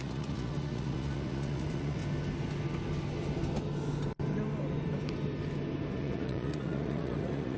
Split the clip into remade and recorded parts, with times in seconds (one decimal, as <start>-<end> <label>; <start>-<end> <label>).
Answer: 0.0-2.0 remade; 2.0-5.9 recorded; 5.9-7.6 remade